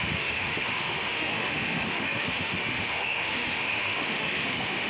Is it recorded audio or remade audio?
remade